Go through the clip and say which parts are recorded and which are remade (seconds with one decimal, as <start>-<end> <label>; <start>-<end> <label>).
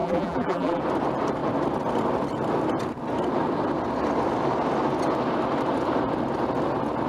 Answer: 0.0-0.8 remade; 0.8-7.1 recorded